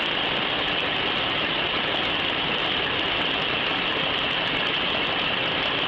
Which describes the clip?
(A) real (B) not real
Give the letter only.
A